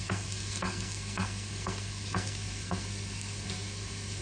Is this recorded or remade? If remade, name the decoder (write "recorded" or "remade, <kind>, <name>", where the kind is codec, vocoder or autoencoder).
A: remade, codec, SNAC